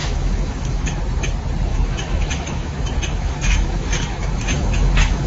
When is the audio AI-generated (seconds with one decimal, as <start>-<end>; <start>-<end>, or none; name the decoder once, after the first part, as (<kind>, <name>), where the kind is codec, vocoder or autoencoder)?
0.0-1.0 (autoencoder, DAC-VAE); 1.7-5.3